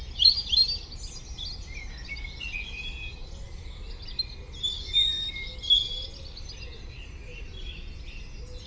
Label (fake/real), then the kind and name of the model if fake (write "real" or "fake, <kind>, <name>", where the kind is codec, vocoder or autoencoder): real